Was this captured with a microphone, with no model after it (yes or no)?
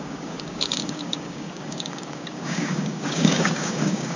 no